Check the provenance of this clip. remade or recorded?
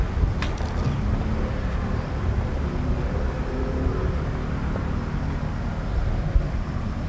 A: recorded